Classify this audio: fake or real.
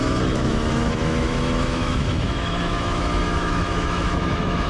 fake